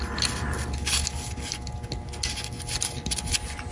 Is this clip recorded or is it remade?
recorded